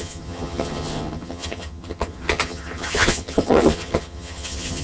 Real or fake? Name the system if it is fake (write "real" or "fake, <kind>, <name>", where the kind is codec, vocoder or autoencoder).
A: fake, vocoder, HiFi-GAN